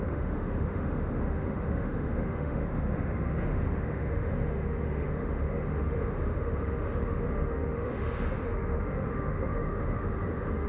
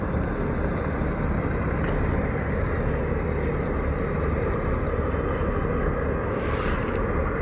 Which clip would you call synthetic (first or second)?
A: first